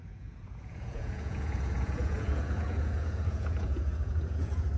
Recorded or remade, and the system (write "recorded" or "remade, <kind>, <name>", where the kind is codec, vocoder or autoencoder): remade, vocoder, Vocos